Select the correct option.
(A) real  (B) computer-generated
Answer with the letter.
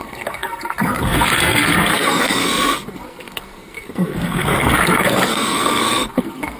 B